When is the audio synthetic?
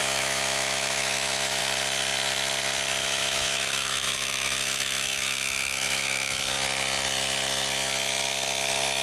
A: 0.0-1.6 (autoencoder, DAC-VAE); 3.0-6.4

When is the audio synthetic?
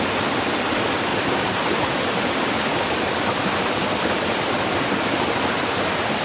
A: 1.1-4.8 (vocoder, BigVGAN v2)